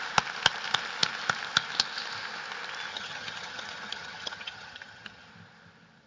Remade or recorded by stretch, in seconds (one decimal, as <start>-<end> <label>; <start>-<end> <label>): 0.0-2.9 recorded; 2.9-5.3 remade; 5.3-6.1 recorded

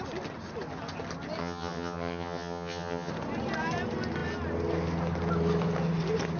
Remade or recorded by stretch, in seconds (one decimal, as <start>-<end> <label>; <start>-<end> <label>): 0.0-1.4 recorded; 1.4-3.1 remade; 3.1-6.4 recorded

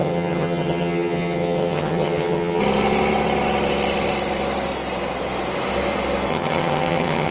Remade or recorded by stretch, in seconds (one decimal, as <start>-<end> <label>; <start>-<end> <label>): 0.0-2.6 remade; 2.6-6.3 recorded; 6.3-7.3 remade